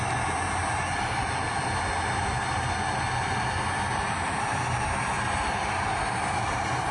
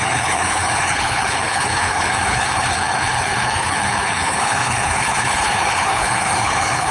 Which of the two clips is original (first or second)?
first